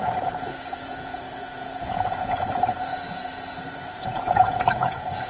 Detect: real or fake fake